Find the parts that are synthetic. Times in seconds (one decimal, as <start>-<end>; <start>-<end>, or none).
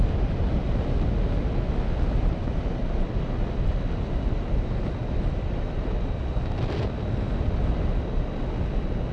5.0-5.5